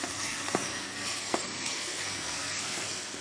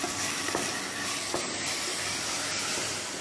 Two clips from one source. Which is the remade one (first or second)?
first